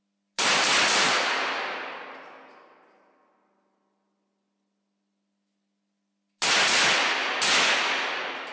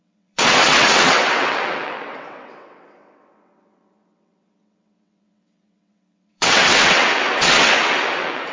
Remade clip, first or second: second